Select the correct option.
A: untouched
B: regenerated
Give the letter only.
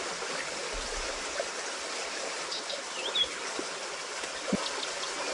A